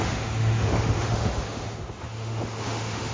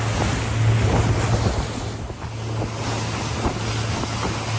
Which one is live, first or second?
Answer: second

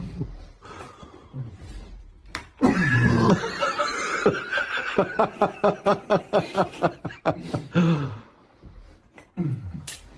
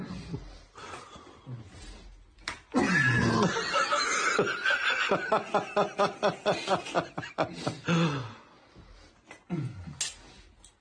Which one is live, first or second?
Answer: second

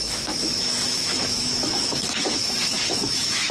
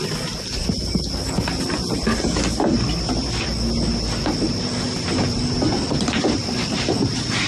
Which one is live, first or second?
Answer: second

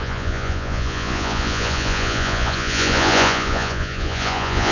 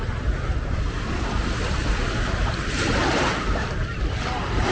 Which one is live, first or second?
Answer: second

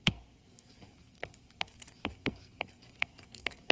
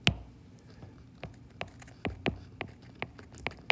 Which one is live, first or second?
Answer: second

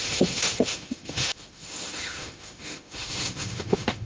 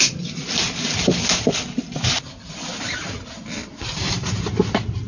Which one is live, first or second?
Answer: second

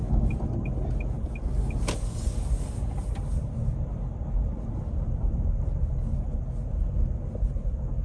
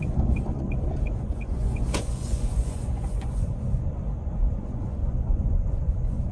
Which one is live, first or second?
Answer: first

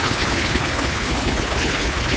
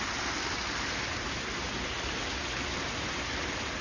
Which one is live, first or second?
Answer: second